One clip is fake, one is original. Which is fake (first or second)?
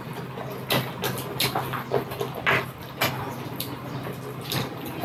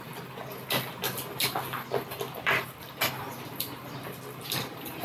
second